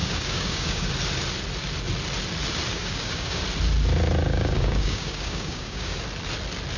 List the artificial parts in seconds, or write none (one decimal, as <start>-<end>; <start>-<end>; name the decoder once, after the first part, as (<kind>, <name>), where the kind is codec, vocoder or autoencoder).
0.0-0.9 (codec, DAC); 2.7-3.4; 4.3-6.0